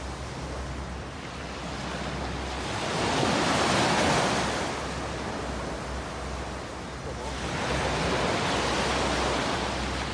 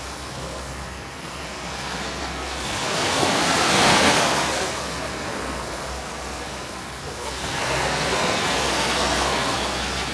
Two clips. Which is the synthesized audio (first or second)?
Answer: second